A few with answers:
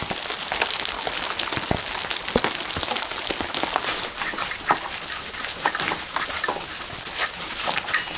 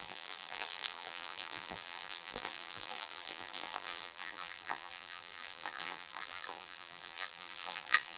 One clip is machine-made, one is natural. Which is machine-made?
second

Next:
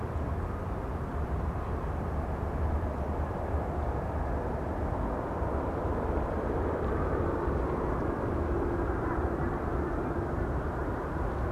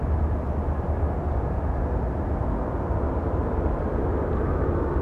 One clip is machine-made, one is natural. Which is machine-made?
first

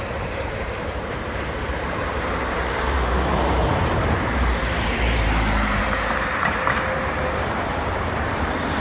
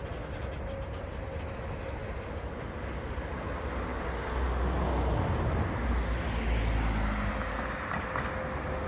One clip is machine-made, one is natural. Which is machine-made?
first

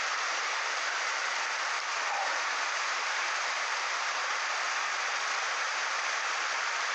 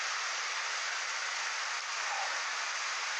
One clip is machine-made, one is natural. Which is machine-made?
first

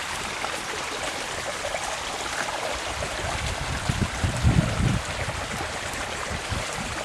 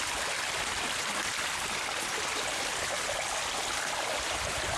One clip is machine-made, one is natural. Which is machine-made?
first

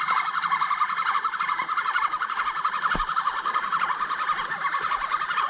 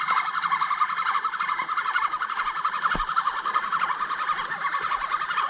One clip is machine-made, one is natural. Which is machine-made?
first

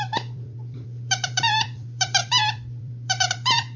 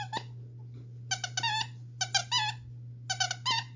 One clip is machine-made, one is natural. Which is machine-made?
first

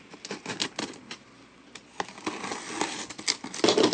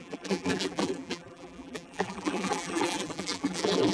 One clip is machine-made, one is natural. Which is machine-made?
second